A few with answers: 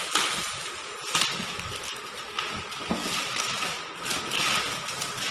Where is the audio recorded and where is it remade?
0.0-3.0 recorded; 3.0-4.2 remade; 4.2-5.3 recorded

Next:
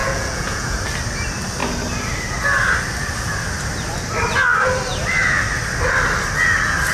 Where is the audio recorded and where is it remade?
0.0-0.8 remade; 0.8-6.9 recorded

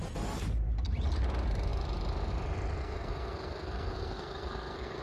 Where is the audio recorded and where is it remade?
0.0-2.8 recorded; 2.8-5.0 remade

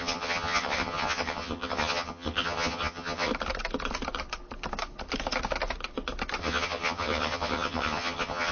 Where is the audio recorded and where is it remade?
0.0-3.3 remade; 3.3-6.4 recorded; 6.4-8.5 remade

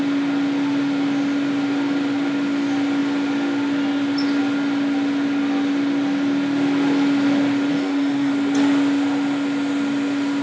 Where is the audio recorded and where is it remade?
0.0-7.7 recorded; 7.7-8.3 remade; 8.3-10.4 recorded

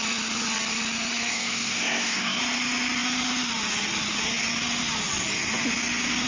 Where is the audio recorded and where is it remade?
0.0-1.3 recorded; 1.3-2.4 remade; 2.4-6.3 recorded